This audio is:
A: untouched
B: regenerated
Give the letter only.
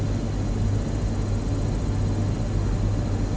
A